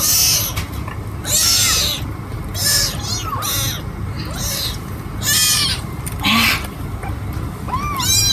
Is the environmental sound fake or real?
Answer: real